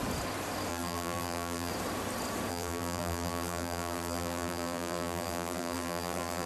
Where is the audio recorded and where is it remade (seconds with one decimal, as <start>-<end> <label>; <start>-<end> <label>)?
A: 0.0-0.7 recorded; 0.7-1.7 remade; 1.7-2.5 recorded; 2.5-6.5 remade

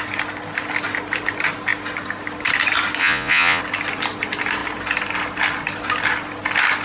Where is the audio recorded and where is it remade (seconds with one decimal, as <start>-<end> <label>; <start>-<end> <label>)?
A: 0.0-3.0 recorded; 3.0-3.6 remade; 3.6-6.8 recorded

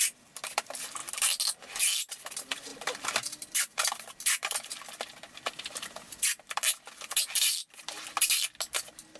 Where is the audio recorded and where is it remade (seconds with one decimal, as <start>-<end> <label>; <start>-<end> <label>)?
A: 0.0-1.0 remade; 1.0-2.1 recorded; 2.1-7.6 remade; 7.6-9.2 recorded

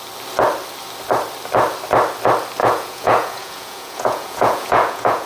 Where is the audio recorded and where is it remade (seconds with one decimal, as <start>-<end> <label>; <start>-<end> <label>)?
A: 0.0-2.6 recorded; 2.6-5.3 remade

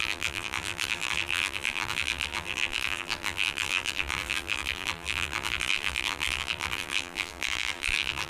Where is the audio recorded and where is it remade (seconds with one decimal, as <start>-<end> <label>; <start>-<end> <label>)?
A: 0.0-8.3 remade